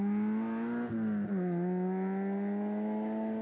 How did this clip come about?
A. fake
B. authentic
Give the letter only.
B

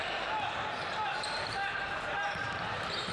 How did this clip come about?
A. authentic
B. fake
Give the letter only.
B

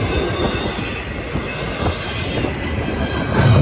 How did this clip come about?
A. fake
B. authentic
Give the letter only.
B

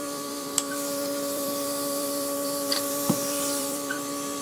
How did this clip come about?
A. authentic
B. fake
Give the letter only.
B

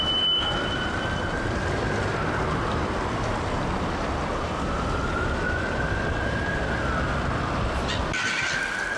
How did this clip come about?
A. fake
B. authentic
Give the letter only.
A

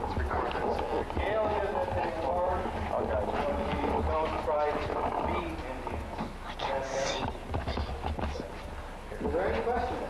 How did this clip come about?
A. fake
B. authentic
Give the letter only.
B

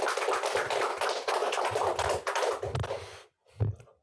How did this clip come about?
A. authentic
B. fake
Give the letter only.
A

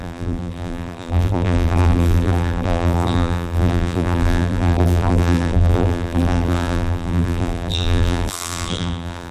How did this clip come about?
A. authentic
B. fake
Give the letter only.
B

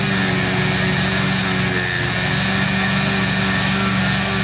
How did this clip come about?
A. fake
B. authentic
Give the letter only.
B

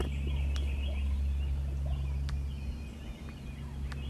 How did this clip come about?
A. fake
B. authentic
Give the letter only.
B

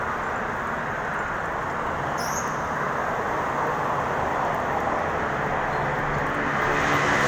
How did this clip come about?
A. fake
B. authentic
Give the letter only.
B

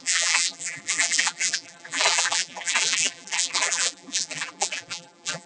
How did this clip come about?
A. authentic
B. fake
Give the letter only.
B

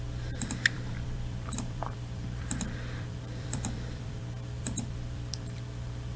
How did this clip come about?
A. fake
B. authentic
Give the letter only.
A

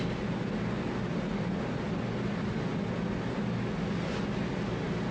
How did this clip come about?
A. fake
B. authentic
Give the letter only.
B